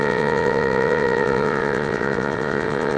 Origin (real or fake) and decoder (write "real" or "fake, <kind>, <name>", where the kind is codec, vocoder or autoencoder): fake, vocoder, WaveNeXt